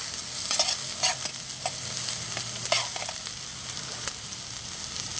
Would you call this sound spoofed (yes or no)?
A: no